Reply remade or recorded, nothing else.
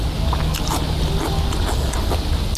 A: recorded